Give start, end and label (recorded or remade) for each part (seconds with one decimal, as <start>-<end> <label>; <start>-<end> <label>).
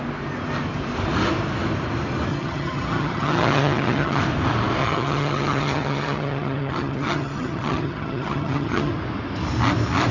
0.0-2.3 recorded; 2.3-4.2 remade; 4.2-4.8 recorded; 4.8-8.9 remade; 8.9-10.1 recorded